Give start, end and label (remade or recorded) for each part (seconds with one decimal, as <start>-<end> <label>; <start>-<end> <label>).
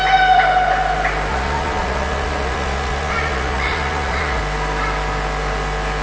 0.0-1.3 recorded; 1.3-4.4 remade; 4.4-6.0 recorded